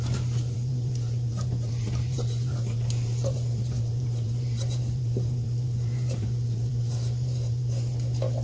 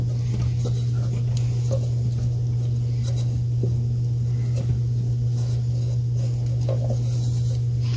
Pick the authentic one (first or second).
second